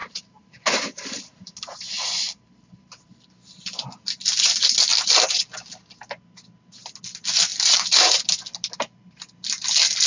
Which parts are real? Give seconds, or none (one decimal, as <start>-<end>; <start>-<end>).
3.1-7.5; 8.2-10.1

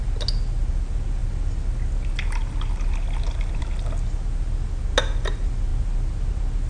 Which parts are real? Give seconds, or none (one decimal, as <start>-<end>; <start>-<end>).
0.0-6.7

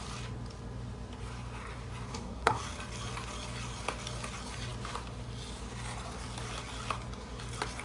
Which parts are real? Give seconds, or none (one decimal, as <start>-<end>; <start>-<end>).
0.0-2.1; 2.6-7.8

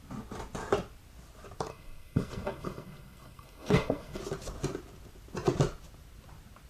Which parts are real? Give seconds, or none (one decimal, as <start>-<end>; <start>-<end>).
0.0-1.7; 4.2-6.7

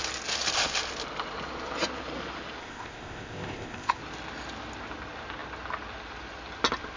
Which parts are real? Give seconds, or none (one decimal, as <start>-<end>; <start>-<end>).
0.0-2.6; 4.0-7.0

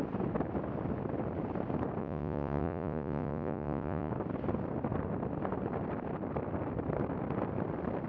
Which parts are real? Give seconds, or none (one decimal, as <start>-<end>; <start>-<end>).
0.0-2.0; 4.1-8.1

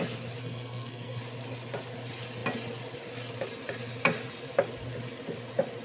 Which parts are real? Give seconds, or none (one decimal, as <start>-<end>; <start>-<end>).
0.0-0.4; 1.2-5.8

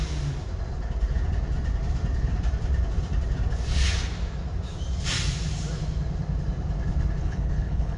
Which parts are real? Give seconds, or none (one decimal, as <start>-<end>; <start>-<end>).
0.0-7.2